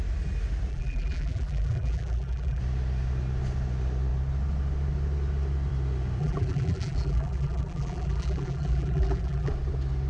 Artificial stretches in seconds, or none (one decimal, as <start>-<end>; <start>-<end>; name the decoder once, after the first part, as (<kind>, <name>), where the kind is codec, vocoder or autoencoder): 0.7-2.6 (vocoder, BigVGAN v2); 6.2-9.5